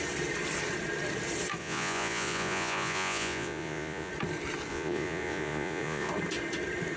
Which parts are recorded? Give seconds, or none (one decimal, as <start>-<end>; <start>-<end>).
0.0-1.6; 4.1-4.7; 6.1-7.0